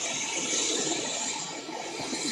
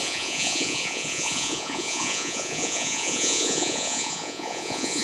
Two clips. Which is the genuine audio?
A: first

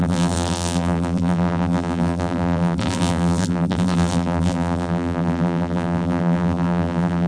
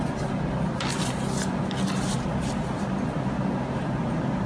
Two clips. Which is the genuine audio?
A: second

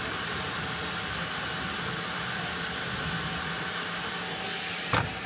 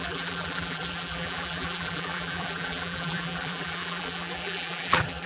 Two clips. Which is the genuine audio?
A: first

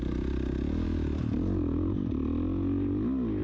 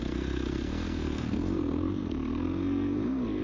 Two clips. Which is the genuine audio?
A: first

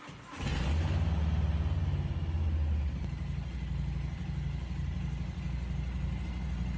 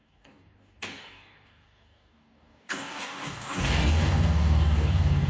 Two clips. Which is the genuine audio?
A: first